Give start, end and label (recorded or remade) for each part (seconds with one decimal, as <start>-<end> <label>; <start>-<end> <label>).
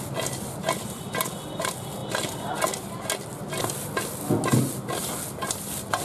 0.0-6.0 recorded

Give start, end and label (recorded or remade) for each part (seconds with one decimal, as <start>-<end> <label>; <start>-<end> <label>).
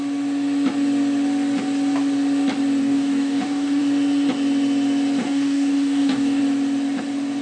0.0-2.8 recorded; 2.8-3.8 remade; 3.8-5.2 recorded; 5.2-6.4 remade; 6.4-7.4 recorded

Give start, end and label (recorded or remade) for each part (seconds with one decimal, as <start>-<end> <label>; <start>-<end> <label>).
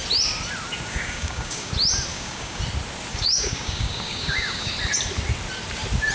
0.0-0.9 recorded; 0.9-1.7 remade; 1.7-2.1 recorded; 2.1-2.6 remade; 2.6-3.1 recorded; 3.1-4.7 remade; 4.7-6.1 recorded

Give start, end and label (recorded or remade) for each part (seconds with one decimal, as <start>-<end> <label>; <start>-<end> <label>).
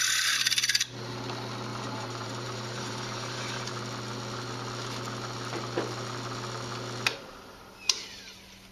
0.0-1.7 recorded; 1.7-3.7 remade; 3.7-8.7 recorded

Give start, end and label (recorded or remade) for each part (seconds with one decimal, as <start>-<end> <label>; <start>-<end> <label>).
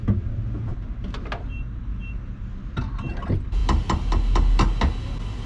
0.0-5.5 recorded